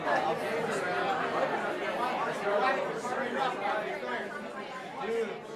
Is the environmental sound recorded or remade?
recorded